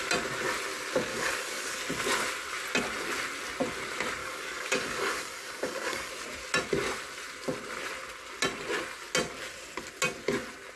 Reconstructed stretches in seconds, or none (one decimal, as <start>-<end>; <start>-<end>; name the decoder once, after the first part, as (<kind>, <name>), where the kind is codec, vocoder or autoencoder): 1.1-1.8 (codec, DAC); 4.2-6.1